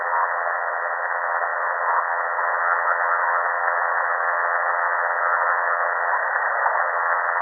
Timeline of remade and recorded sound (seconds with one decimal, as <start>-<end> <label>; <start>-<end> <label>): 0.0-6.1 remade; 6.1-6.8 recorded; 6.8-7.4 remade